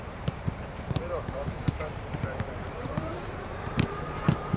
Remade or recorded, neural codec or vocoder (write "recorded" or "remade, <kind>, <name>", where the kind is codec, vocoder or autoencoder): remade, vocoder, BigVGAN v2